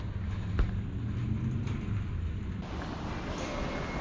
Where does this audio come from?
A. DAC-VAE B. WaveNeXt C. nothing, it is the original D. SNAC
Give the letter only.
C